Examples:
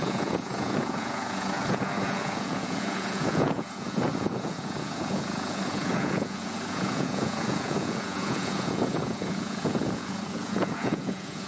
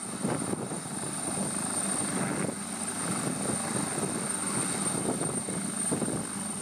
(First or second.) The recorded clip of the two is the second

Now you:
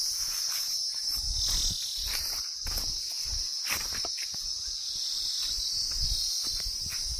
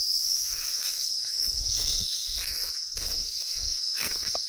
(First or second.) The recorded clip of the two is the first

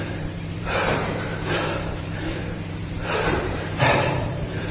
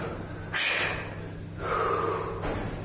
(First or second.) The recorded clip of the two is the second